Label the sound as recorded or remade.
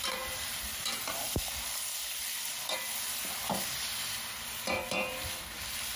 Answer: remade